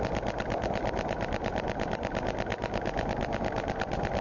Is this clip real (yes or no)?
yes